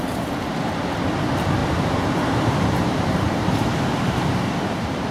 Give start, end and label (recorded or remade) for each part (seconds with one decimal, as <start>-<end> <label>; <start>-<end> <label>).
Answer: 0.0-1.6 recorded; 1.6-5.1 remade